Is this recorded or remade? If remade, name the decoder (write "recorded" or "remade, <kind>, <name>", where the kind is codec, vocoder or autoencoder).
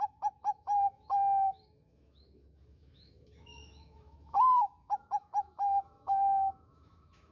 remade, autoencoder, DAC-VAE